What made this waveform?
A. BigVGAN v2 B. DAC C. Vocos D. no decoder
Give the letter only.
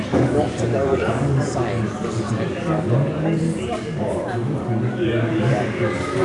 B